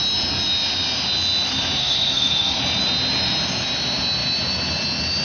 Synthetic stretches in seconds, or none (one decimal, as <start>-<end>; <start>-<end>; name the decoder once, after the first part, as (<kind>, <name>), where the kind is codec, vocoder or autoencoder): 1.8-2.6 (codec, SNAC)